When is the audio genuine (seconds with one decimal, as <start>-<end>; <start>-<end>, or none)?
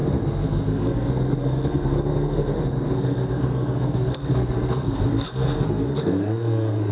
none